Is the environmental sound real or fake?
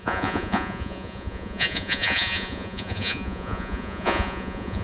fake